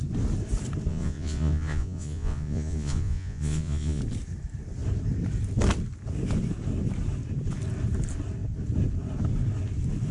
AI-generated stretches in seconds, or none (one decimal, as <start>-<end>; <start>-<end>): 0.9-4.0